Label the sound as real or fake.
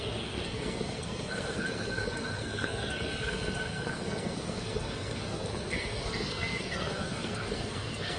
fake